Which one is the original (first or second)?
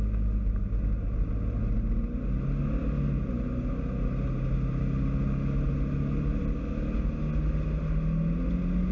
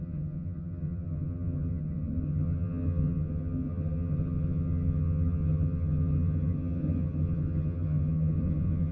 first